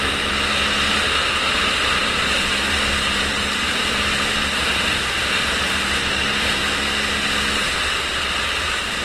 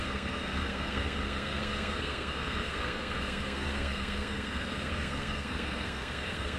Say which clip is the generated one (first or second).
second